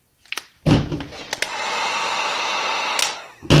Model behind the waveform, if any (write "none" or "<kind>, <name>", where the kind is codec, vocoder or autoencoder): none